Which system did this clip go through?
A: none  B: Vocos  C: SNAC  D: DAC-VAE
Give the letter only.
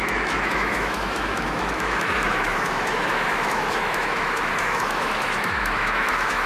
D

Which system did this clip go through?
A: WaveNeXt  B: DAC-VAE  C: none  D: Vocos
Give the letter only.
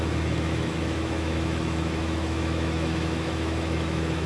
B